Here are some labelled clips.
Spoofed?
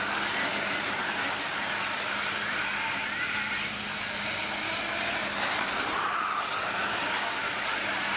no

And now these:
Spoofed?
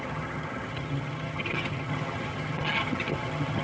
yes